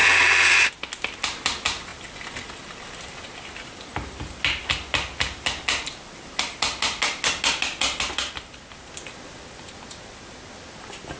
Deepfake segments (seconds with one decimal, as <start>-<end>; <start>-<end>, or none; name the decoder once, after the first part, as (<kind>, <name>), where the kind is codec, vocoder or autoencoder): 0.0-0.7 (vocoder, BigVGAN v2)